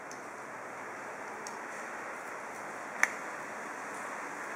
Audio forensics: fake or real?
real